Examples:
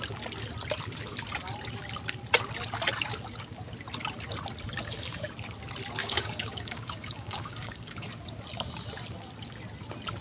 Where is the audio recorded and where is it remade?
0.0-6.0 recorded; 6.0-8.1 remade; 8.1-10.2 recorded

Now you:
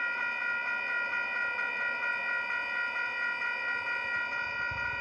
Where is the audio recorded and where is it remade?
0.0-5.0 recorded

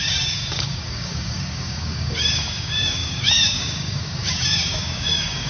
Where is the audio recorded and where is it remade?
0.0-5.5 remade

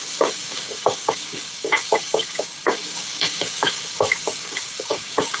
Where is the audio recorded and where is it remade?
0.0-5.4 remade

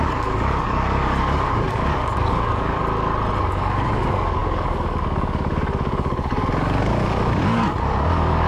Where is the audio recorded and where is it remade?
0.0-2.8 remade; 2.8-3.4 recorded; 3.4-8.5 remade

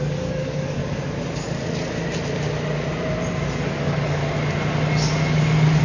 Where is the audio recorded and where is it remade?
0.0-0.8 remade; 0.8-3.6 recorded; 3.6-4.2 remade; 4.2-5.8 recorded

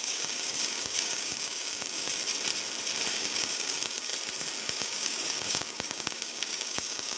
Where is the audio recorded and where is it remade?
0.0-2.2 remade; 2.2-3.1 recorded; 3.1-4.1 remade; 4.1-4.6 recorded; 4.6-7.2 remade